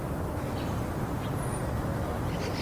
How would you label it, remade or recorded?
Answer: recorded